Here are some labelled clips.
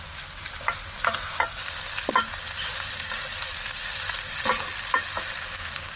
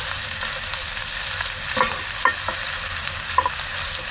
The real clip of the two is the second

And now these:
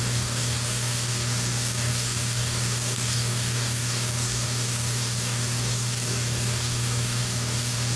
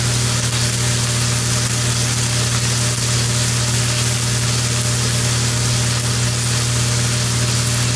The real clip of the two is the second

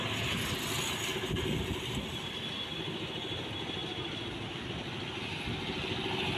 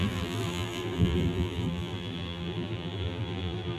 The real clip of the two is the first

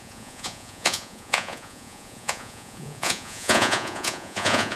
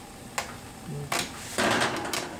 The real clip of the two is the second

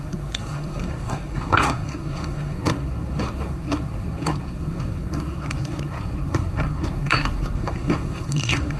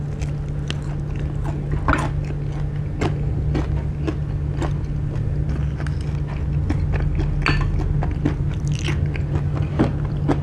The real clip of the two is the second